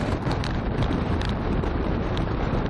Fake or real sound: fake